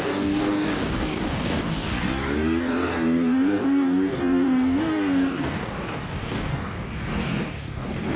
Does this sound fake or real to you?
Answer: fake